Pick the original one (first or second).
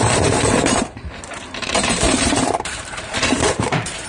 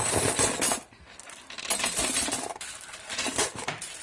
second